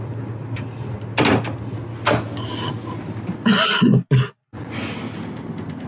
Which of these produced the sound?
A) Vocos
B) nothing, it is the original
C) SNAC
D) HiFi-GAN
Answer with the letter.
B